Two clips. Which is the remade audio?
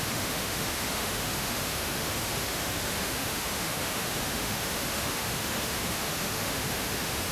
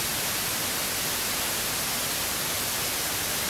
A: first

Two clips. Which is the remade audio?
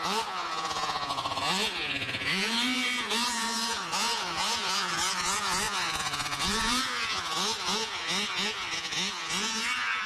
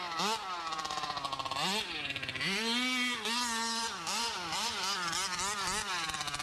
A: first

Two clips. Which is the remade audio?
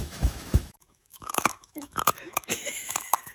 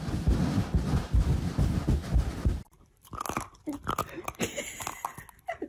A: first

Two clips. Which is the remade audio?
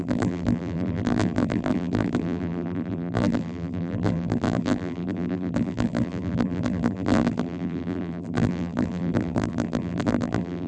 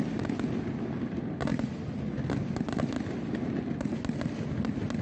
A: first